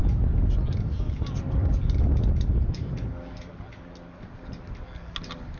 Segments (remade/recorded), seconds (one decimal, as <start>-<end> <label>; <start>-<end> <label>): 0.0-5.6 recorded